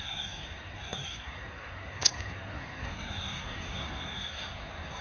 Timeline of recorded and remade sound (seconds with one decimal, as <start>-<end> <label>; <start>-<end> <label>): 0.0-5.0 remade